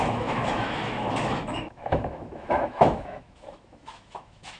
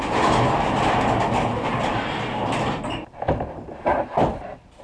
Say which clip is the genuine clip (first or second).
second